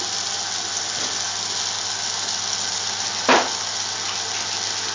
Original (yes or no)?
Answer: yes